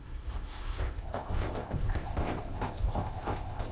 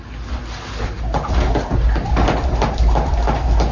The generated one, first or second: first